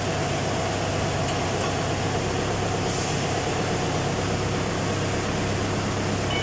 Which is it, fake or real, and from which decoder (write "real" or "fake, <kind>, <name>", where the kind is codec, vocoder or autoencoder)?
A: real